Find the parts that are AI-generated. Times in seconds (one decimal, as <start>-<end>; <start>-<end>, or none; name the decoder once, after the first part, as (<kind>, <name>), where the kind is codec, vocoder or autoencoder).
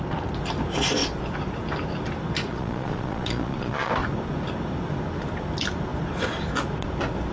2.5-3.9 (vocoder, Vocos)